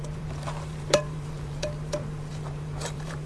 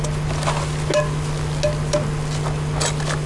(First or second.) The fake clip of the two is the first